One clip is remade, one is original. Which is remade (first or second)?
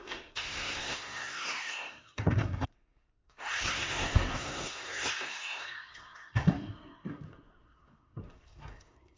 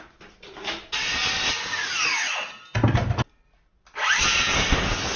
first